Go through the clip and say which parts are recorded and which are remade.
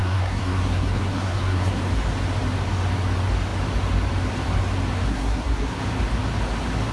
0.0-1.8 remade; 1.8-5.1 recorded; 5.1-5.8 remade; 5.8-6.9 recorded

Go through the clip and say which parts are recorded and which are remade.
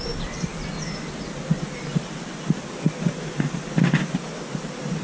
0.0-5.0 recorded